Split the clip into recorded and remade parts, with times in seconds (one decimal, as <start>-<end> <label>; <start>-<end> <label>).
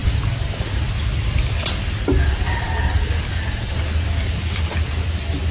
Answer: 0.0-5.5 recorded